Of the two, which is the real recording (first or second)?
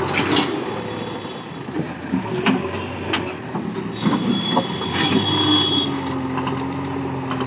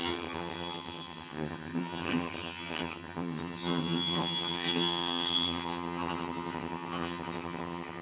first